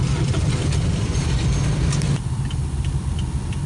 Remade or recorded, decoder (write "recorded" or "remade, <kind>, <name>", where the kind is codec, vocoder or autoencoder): remade, vocoder, BigVGAN v2